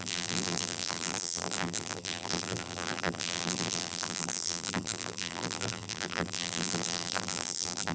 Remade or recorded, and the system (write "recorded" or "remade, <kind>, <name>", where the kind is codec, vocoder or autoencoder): remade, vocoder, BigVGAN v2